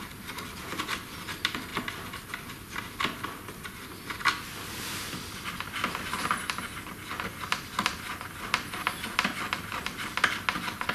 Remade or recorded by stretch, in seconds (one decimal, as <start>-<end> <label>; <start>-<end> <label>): 0.0-10.9 recorded